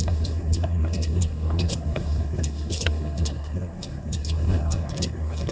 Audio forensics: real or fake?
fake